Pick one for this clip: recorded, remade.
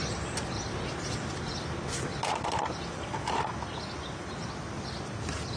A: recorded